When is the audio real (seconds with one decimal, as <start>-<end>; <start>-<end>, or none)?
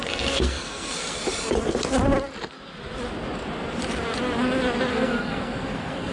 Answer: 1.2-4.9